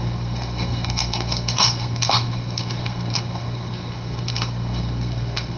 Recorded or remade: remade